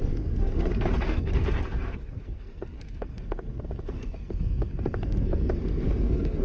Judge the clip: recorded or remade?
remade